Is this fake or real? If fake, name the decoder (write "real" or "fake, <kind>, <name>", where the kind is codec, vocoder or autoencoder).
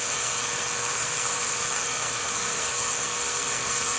fake, codec, SNAC